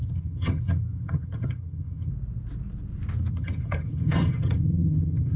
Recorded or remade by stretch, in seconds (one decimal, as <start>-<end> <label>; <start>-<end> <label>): 0.0-2.1 remade; 2.1-3.3 recorded; 3.3-5.4 remade